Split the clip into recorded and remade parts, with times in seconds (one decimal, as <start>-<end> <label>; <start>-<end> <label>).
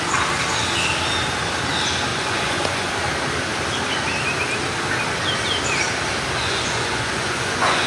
0.0-2.1 recorded; 2.1-2.9 remade; 2.9-6.4 recorded; 6.4-7.9 remade